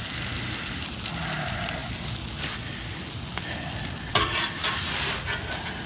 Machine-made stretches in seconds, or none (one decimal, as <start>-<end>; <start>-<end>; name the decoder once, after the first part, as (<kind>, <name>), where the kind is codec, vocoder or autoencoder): none